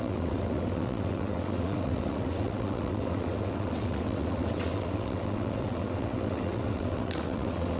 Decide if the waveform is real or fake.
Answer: fake